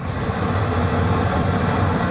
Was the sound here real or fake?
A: fake